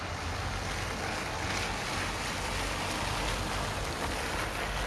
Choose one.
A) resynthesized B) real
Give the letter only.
B